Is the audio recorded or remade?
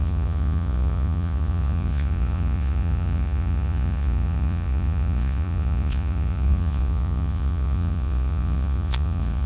remade